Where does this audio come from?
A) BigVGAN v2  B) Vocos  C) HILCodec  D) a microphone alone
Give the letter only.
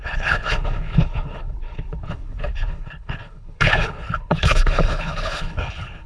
C